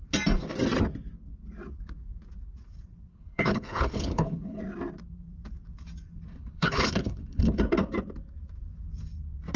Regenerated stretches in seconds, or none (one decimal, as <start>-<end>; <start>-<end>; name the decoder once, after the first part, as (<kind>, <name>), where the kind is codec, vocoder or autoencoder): 3.1-4.6 (codec, HILCodec); 6.3-7.6